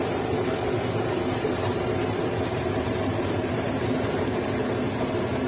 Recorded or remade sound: recorded